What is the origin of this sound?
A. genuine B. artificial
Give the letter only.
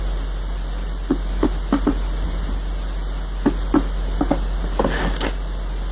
A